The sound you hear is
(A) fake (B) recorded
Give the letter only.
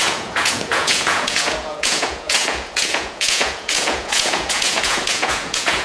A